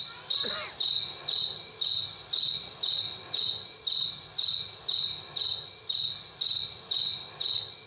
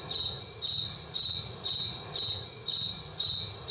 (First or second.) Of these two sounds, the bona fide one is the first